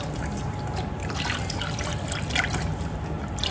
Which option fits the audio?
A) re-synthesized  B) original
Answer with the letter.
B